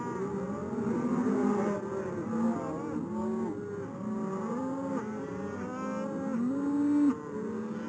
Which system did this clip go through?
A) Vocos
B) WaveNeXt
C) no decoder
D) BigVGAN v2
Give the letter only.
C